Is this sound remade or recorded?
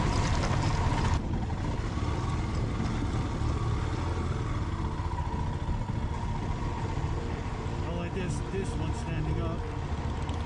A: recorded